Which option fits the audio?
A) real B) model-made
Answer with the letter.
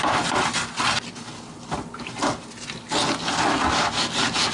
A